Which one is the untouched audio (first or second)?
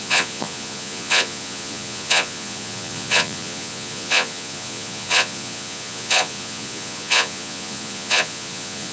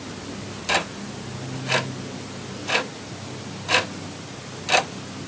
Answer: second